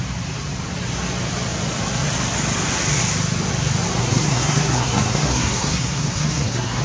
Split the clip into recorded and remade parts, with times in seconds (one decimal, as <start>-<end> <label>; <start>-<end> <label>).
0.0-4.0 recorded; 4.0-6.8 remade